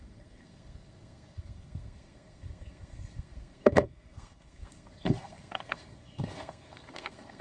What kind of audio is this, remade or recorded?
remade